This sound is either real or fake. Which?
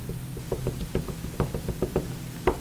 real